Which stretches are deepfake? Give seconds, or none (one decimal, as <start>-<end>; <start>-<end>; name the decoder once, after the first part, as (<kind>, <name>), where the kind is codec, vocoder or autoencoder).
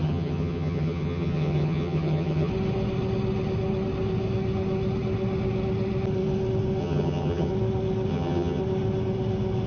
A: 0.0-2.5 (vocoder, HiFi-GAN); 6.8-7.5; 8.1-8.6